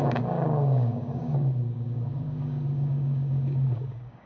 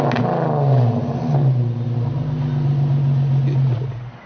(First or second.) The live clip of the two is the second